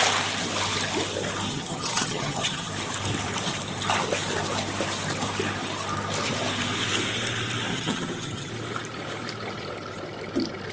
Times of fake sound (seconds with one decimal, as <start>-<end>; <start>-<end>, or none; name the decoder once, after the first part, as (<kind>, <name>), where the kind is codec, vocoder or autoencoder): 1.5-2.7 (vocoder, HiFi-GAN); 7.7-8.5